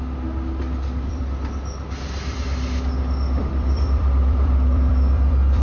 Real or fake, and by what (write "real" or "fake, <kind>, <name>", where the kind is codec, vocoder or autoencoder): fake, vocoder, BigVGAN v2